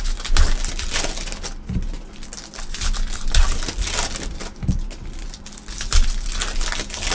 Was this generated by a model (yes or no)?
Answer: no